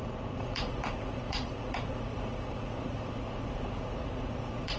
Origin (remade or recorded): remade